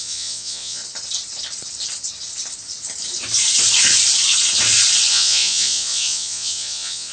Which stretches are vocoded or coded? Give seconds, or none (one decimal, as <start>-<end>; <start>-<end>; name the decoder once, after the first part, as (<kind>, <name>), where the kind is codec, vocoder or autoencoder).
0.0-0.8 (vocoder, Vocos); 5.1-7.1